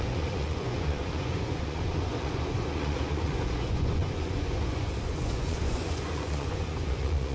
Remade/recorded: remade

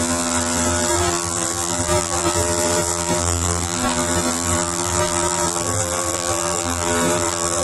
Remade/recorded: remade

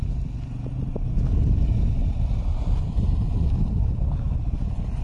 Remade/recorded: recorded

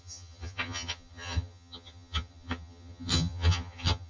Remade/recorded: remade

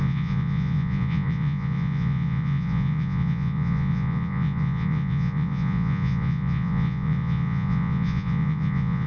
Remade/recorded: remade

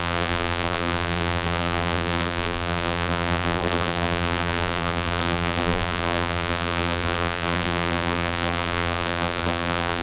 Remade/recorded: remade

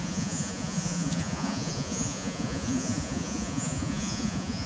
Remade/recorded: remade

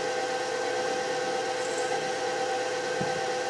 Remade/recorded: recorded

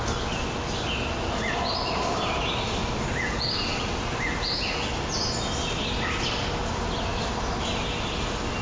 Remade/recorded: recorded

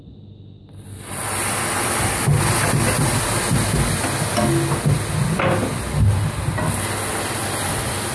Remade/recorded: recorded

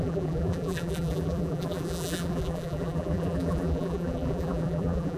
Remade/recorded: remade